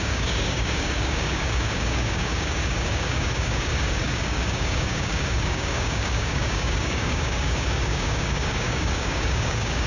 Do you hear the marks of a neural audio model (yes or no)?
yes